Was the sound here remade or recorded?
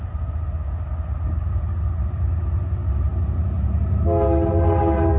recorded